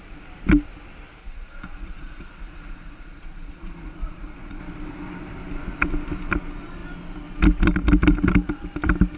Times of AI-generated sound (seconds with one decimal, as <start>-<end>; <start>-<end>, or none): 1.2-4.6

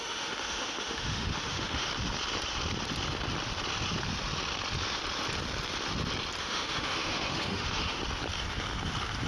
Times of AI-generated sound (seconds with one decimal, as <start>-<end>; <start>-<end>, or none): 0.0-1.9; 6.4-8.0

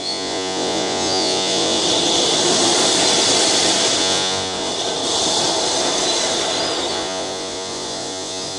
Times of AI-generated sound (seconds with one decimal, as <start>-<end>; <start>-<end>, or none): 0.0-1.8; 4.0-4.7; 6.9-8.6

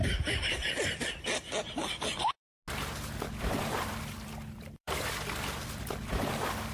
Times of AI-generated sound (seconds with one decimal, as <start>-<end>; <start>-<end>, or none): 0.0-2.4; 3.2-6.7

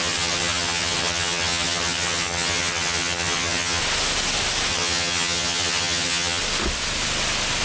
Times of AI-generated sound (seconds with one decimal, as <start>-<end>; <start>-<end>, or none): 0.0-3.8; 4.7-6.4

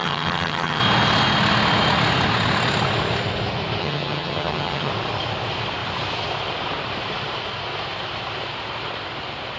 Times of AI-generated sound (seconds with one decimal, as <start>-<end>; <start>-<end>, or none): 0.0-0.8; 3.8-4.9

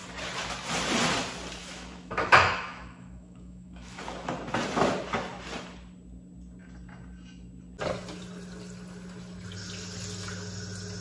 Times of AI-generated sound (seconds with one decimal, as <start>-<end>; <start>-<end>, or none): 1.6-4.0

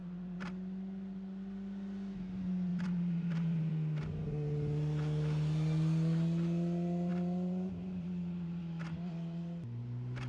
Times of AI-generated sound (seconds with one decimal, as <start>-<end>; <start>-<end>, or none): 0.0-0.5; 2.7-3.7; 7.1-8.6